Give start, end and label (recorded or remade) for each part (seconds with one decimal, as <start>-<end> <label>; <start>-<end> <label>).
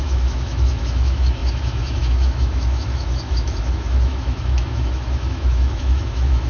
0.0-6.5 remade